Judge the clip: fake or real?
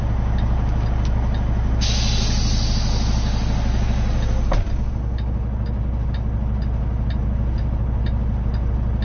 real